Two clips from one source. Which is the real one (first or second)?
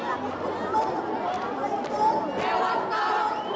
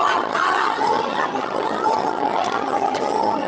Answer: first